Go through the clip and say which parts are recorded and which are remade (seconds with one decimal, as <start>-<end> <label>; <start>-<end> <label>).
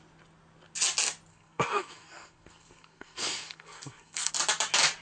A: 0.0-1.3 recorded; 1.3-4.3 remade; 4.3-5.0 recorded